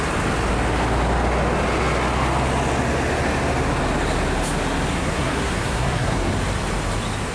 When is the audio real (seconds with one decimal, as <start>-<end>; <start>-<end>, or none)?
0.0-4.9; 6.3-7.3